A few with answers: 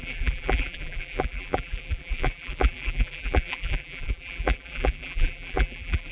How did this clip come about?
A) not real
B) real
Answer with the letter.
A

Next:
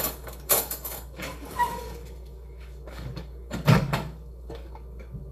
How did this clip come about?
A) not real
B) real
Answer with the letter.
A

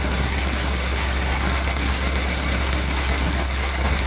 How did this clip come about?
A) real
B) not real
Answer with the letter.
B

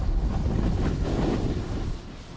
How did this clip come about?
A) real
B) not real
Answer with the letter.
A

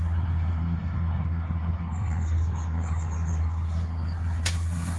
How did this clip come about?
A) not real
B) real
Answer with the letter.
A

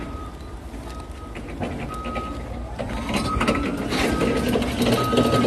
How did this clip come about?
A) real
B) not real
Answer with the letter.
A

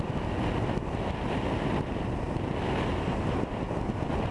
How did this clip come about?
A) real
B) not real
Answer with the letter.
A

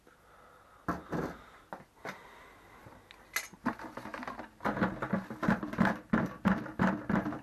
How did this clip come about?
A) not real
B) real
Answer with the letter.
B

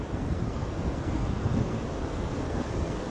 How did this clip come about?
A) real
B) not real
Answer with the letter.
B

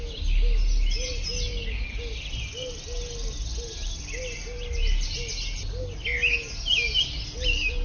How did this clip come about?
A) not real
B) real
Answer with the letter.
B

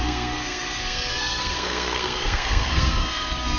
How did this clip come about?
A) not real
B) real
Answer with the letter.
A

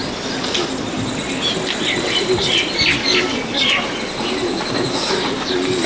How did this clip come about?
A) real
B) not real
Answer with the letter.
A